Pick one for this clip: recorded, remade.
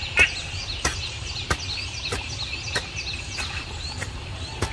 recorded